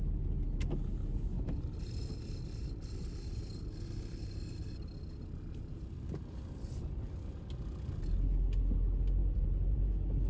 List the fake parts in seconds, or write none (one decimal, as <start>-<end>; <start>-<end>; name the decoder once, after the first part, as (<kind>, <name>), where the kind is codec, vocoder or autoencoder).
9.2-9.8 (vocoder, BigVGAN v2)